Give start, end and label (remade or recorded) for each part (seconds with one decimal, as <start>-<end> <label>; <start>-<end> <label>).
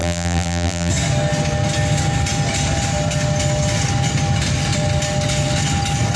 0.0-0.9 remade; 0.9-6.2 recorded